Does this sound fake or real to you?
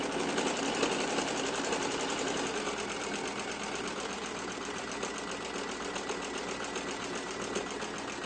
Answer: real